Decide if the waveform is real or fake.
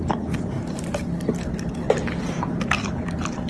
real